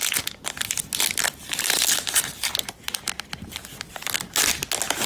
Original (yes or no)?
yes